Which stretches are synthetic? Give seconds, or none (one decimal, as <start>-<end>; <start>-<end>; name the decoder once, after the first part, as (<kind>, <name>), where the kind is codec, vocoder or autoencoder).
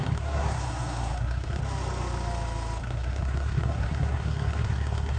0.0-1.6 (codec, SNAC); 2.8-5.2